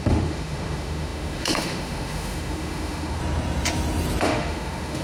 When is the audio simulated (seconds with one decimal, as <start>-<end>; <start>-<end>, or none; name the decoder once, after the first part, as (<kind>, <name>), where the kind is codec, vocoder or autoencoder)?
0.0-3.2 (autoencoder, DAC-VAE); 4.2-5.0